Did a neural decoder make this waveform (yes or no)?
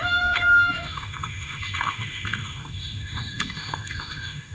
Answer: yes